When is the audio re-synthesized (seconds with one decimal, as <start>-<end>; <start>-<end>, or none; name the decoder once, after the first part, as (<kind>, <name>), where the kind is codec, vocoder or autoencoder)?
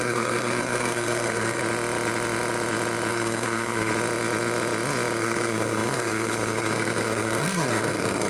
0.0-1.6 (codec, SNAC); 3.1-3.9; 5.2-8.3